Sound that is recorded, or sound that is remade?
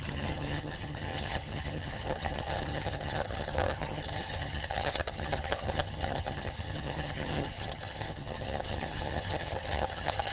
remade